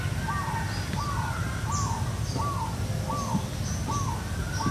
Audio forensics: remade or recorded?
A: recorded